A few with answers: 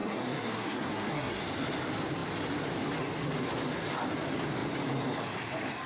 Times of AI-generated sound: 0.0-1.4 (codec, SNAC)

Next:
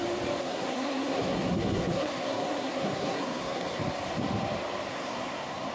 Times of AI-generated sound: 0.4-3.8 (codec, SNAC); 4.9-5.7

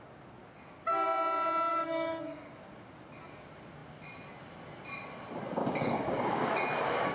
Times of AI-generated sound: 1.7-2.5 (codec, DAC); 5.6-6.5

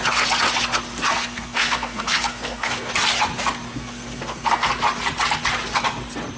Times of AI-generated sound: 1.1-2.9 (codec, SNAC); 3.7-4.7